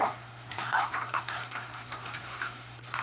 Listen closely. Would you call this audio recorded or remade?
remade